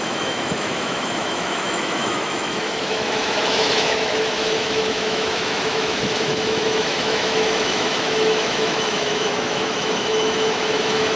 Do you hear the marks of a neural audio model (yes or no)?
yes